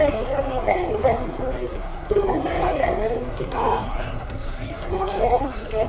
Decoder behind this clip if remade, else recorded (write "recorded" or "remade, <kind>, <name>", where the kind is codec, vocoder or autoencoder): remade, codec, SNAC